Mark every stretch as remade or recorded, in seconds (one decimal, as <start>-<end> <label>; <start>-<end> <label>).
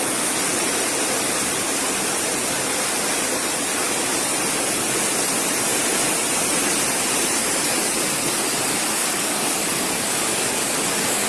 0.0-9.0 recorded; 9.0-11.3 remade